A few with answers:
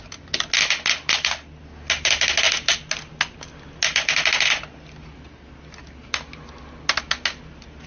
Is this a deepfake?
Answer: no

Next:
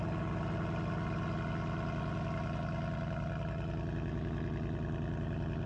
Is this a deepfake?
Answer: no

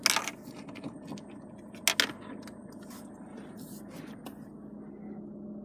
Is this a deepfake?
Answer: no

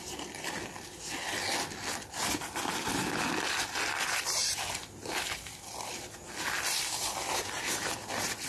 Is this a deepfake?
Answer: no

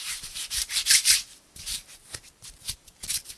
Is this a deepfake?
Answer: yes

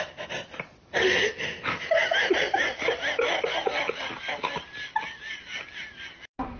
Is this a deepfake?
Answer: no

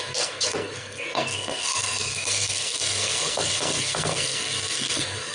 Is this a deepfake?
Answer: yes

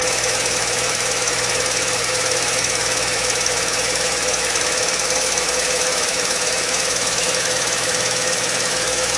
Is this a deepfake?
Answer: yes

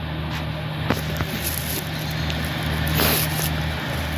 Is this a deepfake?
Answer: no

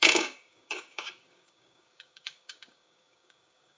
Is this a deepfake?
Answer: yes